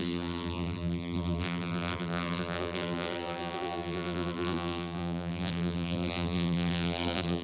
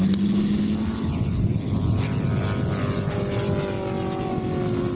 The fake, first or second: first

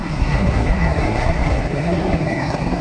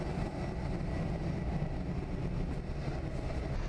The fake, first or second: first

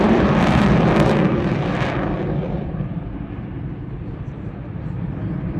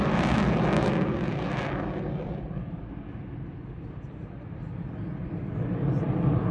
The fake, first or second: first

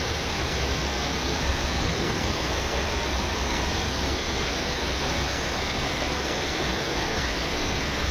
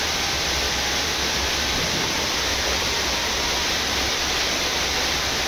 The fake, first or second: first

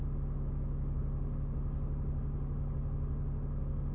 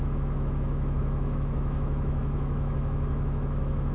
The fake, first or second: second